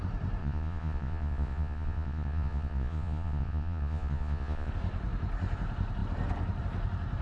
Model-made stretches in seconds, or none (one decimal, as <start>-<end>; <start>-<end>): 0.4-4.7